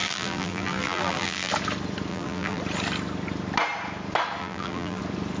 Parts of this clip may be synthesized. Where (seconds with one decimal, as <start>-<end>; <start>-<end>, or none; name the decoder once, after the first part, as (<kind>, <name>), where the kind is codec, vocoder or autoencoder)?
0.0-1.5 (vocoder, BigVGAN v2); 2.1-2.6; 4.4-5.0